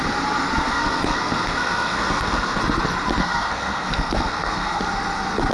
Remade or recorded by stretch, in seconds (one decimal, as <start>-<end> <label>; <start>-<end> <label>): 0.0-0.6 recorded; 0.6-2.6 remade; 2.6-3.2 recorded; 3.2-4.8 remade; 4.8-5.5 recorded